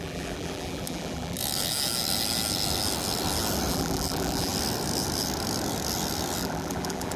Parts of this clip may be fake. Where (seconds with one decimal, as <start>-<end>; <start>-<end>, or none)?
0.0-1.4; 3.7-4.5; 6.4-7.2